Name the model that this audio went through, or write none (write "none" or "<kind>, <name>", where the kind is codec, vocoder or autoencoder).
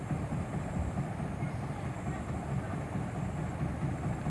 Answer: none